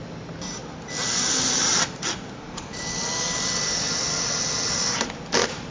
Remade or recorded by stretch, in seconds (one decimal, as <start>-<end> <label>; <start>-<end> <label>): 0.0-0.6 recorded; 0.6-4.0 remade; 4.0-5.7 recorded